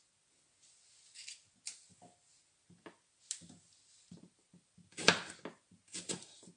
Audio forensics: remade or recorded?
recorded